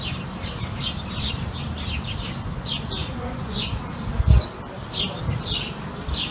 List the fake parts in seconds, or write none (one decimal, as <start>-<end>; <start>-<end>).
3.0-3.8